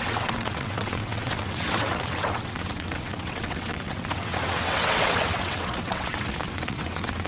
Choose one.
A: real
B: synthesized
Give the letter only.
B